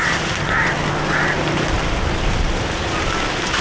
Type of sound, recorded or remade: recorded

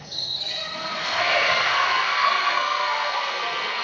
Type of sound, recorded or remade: remade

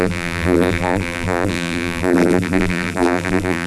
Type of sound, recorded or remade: remade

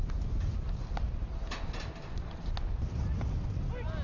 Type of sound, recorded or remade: recorded